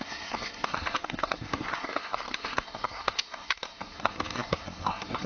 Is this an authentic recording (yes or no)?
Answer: no